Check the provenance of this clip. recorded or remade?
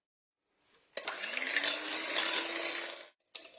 recorded